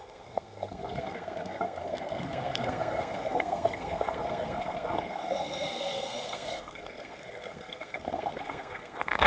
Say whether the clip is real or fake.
fake